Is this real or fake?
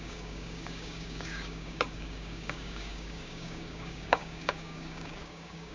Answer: fake